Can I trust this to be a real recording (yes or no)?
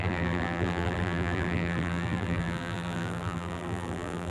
no